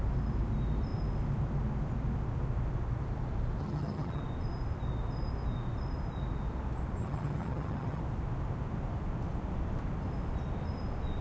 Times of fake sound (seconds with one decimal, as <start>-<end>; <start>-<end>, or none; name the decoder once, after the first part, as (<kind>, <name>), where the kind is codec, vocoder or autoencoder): 3.6-4.2 (vocoder, HiFi-GAN); 7.0-8.0